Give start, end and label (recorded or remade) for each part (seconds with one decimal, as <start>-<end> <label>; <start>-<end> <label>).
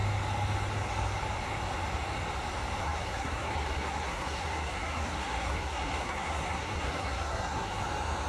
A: 0.0-2.8 recorded; 2.8-7.8 remade; 7.8-8.3 recorded